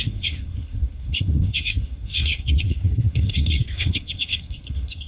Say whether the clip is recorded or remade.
remade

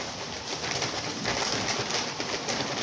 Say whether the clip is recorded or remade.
recorded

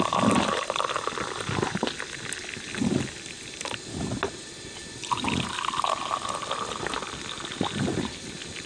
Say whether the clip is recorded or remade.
recorded